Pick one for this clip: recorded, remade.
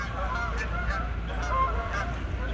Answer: recorded